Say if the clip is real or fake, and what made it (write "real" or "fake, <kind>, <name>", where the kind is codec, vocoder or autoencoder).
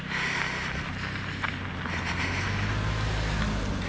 real